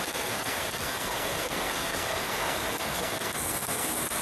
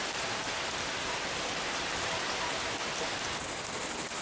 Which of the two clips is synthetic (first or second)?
first